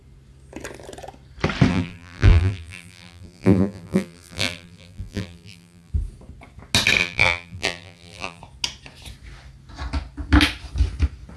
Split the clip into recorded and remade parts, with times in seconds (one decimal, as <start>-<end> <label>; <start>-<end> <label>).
0.0-1.7 recorded; 1.7-5.9 remade; 5.9-7.0 recorded; 7.0-8.4 remade; 8.4-11.4 recorded